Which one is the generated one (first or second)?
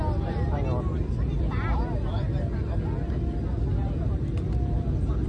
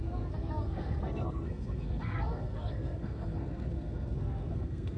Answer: second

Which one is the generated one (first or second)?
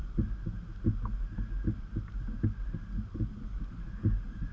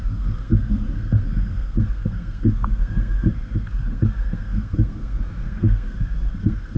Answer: second